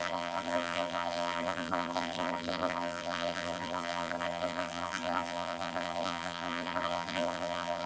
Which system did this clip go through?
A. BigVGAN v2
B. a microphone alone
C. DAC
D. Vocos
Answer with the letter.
A